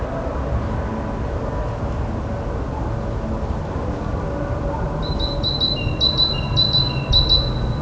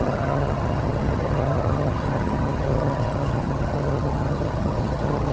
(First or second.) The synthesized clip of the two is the second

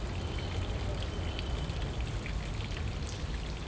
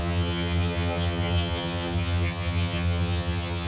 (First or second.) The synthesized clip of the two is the second